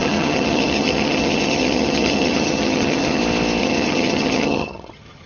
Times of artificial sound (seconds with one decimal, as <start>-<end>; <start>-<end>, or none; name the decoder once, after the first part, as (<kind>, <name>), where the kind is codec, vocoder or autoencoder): 0.0-3.2 (vocoder, HiFi-GAN); 3.6-5.3